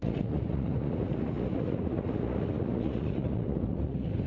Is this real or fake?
fake